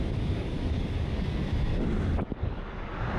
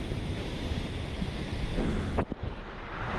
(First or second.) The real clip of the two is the second